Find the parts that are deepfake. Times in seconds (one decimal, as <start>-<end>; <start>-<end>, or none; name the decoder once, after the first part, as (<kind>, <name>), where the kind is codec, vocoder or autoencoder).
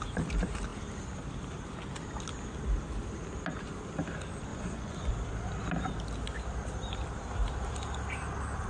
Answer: 4.5-5.1 (vocoder, Vocos)